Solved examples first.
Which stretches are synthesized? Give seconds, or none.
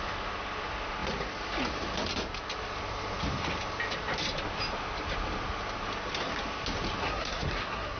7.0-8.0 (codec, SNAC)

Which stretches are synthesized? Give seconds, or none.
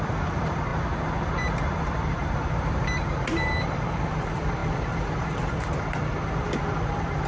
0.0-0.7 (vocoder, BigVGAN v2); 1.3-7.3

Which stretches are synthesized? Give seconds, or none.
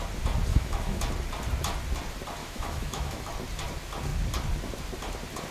0.5-1.0 (autoencoder, DAC-VAE); 2.4-3.3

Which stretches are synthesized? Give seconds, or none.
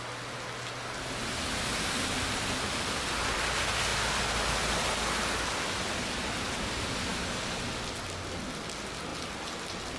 none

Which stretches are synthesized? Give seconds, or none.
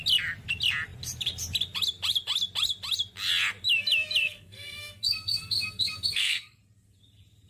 4.2-6.6 (codec, SNAC)